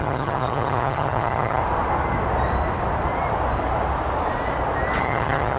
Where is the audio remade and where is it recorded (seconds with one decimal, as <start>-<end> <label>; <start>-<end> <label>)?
0.0-1.6 remade; 1.6-5.0 recorded; 5.0-5.6 remade